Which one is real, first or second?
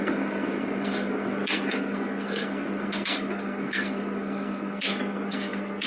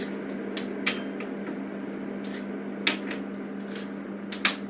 second